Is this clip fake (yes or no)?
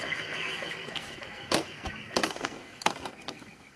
yes